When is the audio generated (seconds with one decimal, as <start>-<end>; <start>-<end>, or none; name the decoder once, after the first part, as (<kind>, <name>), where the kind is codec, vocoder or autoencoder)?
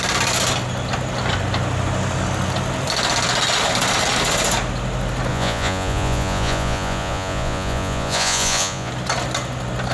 5.3-8.9 (vocoder, Vocos)